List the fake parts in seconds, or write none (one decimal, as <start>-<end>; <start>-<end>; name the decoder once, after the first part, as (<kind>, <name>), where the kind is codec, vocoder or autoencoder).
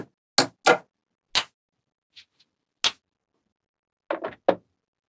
none